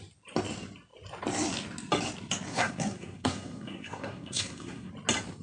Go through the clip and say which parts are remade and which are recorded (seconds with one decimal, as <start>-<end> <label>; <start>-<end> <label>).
0.0-2.5 recorded; 2.5-4.9 remade; 4.9-5.4 recorded

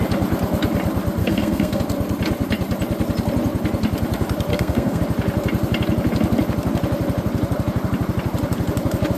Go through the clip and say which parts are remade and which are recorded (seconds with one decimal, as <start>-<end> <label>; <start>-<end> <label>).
0.0-1.2 recorded; 1.2-1.8 remade; 1.8-4.5 recorded; 4.5-5.0 remade; 5.0-9.2 recorded

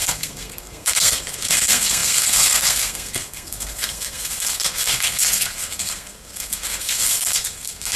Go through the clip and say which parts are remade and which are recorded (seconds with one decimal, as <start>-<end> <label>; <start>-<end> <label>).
0.0-8.0 remade

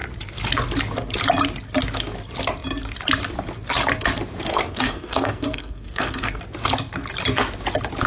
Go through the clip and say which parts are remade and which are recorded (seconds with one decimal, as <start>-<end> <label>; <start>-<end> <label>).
0.0-4.5 recorded; 4.5-6.4 remade; 6.4-8.1 recorded

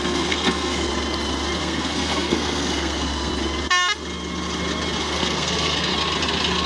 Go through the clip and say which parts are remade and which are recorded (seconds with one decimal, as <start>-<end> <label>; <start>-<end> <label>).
0.0-0.9 remade; 0.9-1.6 recorded; 1.6-3.3 remade; 3.3-5.0 recorded; 5.0-5.9 remade; 5.9-6.7 recorded

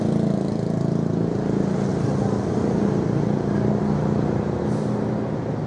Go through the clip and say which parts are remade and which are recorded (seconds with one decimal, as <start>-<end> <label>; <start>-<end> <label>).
0.0-5.7 recorded

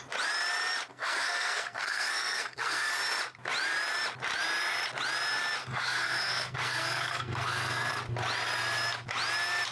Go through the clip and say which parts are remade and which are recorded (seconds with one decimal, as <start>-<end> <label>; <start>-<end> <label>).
0.0-0.9 recorded; 0.9-2.9 remade; 2.9-5.6 recorded; 5.6-7.9 remade; 7.9-9.7 recorded